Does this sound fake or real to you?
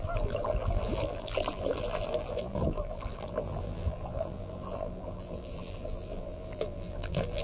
fake